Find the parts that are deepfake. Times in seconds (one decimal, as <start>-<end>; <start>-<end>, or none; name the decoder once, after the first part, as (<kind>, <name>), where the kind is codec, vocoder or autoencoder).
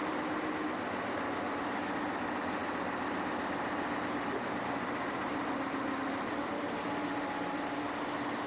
none